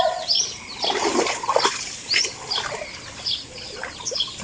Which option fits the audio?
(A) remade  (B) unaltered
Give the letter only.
B